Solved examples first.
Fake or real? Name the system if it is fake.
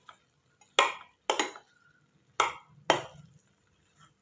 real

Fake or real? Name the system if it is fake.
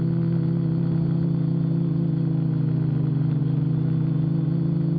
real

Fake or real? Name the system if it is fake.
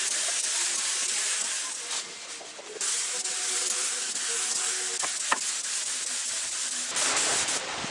real